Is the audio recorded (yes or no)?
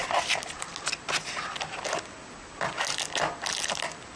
yes